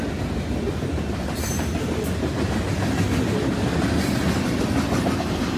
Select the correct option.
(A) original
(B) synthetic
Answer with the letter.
A